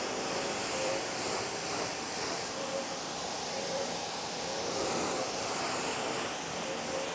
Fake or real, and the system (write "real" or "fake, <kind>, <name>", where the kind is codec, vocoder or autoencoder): fake, vocoder, BigVGAN v2